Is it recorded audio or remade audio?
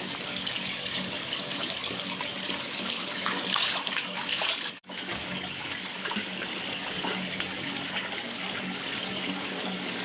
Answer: remade